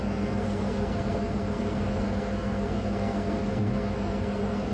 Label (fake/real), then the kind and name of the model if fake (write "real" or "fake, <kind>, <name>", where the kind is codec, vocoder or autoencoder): fake, codec, SNAC